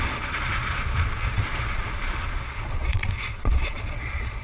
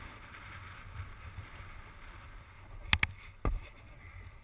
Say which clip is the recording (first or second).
second